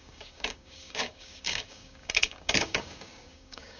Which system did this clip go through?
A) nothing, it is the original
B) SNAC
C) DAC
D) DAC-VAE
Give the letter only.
C